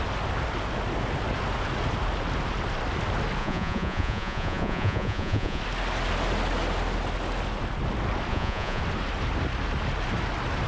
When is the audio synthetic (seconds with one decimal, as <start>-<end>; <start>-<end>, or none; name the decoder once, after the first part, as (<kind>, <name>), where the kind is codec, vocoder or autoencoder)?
3.4-5.6 (vocoder, Vocos); 8.3-8.8